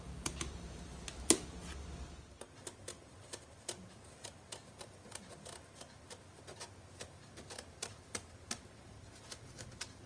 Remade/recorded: recorded